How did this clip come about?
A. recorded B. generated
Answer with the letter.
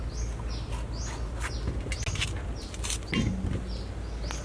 A